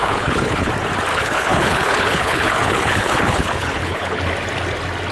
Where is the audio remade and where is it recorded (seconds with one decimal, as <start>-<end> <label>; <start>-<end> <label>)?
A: 0.0-0.7 remade; 0.7-1.1 recorded; 1.1-4.2 remade; 4.2-5.1 recorded